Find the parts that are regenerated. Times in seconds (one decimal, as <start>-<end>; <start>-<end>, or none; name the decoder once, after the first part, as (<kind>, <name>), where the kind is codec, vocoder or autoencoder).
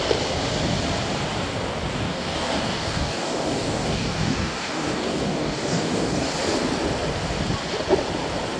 1.9-6.3 (codec, DAC)